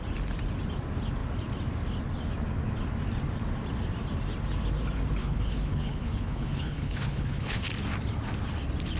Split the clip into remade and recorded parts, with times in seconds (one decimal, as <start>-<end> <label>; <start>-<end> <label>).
0.0-5.2 recorded; 5.2-7.7 remade; 7.7-9.0 recorded